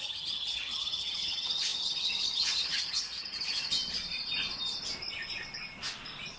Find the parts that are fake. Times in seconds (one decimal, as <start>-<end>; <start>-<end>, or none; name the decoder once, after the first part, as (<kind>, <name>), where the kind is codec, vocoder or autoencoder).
0.0-3.8 (vocoder, HiFi-GAN)